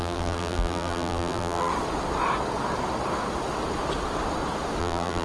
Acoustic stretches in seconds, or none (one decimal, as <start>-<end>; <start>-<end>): 1.7-4.8